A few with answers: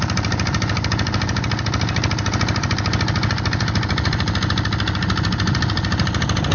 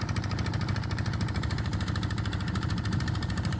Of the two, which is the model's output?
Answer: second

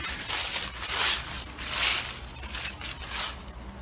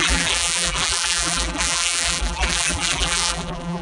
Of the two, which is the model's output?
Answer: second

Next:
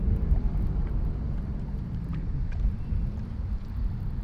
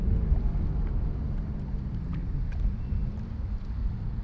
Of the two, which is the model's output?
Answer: first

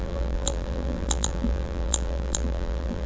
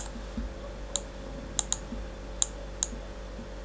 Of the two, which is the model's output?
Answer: first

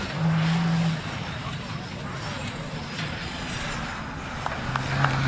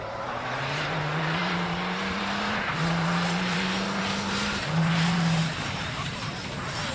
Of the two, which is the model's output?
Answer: second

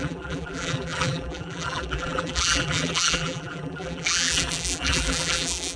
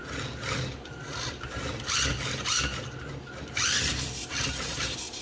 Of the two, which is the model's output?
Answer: first